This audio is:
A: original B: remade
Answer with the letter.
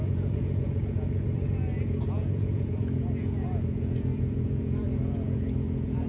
B